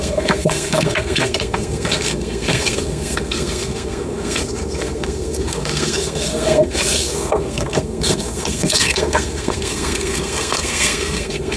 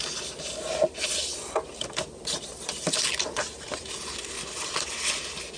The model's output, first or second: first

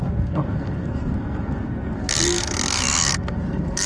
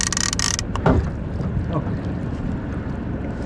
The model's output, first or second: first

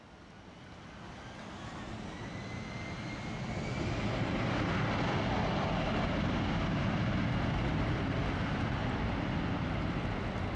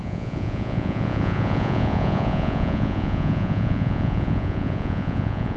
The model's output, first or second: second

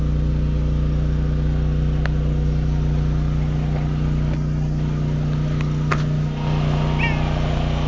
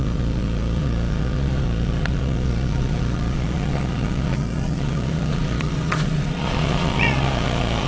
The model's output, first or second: second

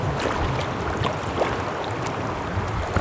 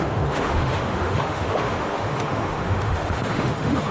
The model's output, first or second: second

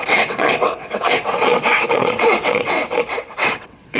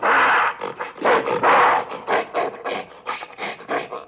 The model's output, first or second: first